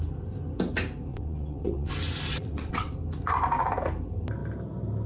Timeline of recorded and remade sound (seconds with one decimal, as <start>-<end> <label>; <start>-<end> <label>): 0.0-1.1 recorded; 1.1-1.9 remade; 1.9-2.3 recorded; 2.3-2.9 remade; 2.9-5.1 recorded